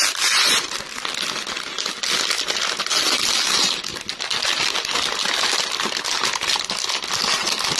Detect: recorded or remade recorded